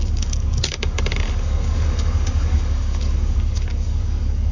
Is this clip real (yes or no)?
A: no